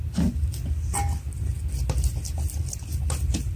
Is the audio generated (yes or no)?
no